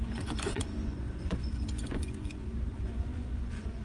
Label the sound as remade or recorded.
remade